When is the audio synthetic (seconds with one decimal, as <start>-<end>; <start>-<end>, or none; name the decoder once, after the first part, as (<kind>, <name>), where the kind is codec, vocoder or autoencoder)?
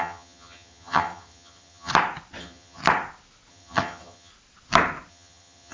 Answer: 0.0-1.9 (vocoder, HiFi-GAN); 2.4-2.8; 3.5-4.3; 5.1-5.7